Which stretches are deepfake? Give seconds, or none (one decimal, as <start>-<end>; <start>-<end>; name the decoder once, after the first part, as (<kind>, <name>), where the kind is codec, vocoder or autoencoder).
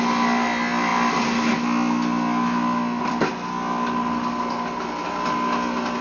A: none